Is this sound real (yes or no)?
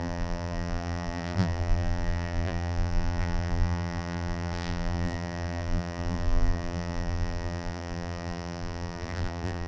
no